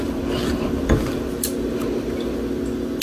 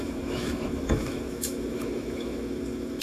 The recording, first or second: first